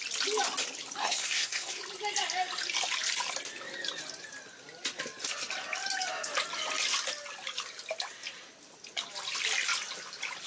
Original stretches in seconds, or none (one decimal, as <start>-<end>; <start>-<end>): 0.0-1.0; 1.8-10.5